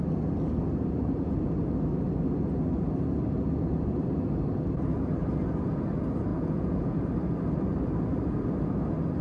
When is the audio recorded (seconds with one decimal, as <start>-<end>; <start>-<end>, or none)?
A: 0.0-6.3; 7.1-9.2